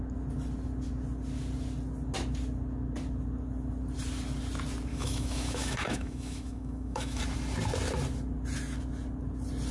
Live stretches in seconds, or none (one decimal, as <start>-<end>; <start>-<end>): 0.0-4.9; 7.2-9.7